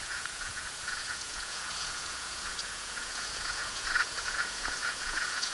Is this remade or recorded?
remade